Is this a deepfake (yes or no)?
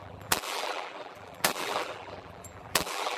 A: yes